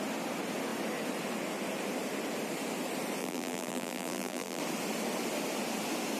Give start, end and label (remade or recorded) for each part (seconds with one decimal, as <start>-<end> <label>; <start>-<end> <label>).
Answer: 0.0-3.2 recorded; 3.2-4.6 remade; 4.6-6.2 recorded